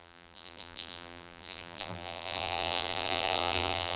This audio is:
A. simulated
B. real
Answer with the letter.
A